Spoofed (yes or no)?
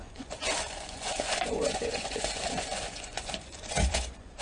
yes